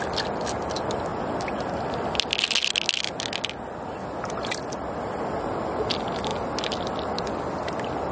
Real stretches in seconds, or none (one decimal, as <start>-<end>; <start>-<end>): 0.0-8.1